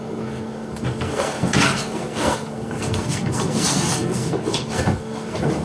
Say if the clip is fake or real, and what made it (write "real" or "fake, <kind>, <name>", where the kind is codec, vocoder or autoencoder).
fake, codec, SNAC